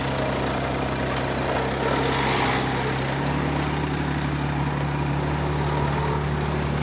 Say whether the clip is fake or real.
real